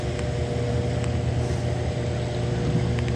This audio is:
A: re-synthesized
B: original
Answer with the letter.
B